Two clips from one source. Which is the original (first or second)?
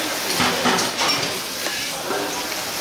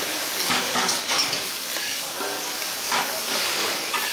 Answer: first